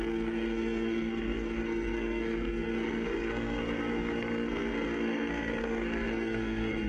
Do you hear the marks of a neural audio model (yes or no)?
yes